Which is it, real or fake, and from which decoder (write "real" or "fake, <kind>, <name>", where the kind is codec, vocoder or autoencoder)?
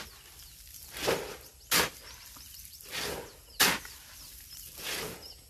real